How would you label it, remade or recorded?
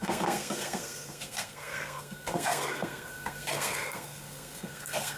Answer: remade